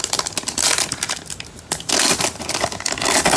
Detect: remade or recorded recorded